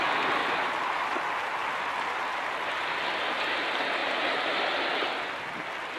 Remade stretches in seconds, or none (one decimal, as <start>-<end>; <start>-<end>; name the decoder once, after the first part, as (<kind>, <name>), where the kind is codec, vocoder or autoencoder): 0.4-0.9 (vocoder, BigVGAN v2); 4.0-4.6